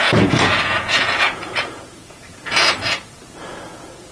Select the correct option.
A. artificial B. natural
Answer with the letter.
A